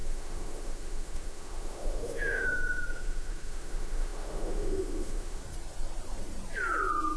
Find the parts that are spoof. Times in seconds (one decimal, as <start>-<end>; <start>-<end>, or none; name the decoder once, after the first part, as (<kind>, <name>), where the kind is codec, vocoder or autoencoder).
0.0-5.4 (autoencoder, DAC-VAE)